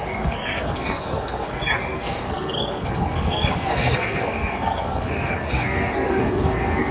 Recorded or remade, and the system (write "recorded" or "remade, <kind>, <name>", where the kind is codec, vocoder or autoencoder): remade, codec, SNAC